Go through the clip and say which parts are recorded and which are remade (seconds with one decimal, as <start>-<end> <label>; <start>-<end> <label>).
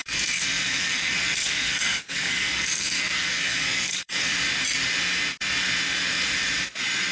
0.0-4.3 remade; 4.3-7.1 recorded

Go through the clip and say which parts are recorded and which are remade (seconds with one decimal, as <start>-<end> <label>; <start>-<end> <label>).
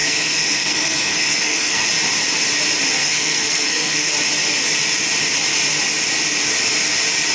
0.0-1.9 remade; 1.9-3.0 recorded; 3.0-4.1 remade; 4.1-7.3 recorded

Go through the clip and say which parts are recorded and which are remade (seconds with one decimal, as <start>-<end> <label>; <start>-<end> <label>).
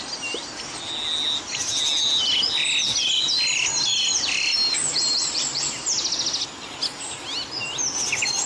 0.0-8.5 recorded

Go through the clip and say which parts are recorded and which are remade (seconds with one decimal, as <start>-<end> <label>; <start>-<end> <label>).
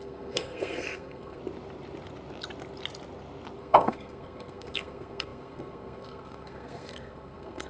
0.0-1.4 remade; 1.4-3.6 recorded; 3.6-7.7 remade